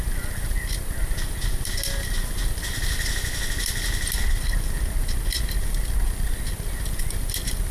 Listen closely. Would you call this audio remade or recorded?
recorded